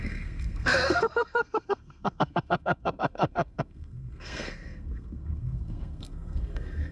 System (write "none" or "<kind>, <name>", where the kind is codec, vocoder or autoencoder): codec, SNAC